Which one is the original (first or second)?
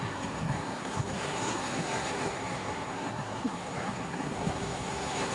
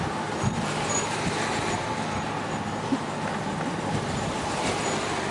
second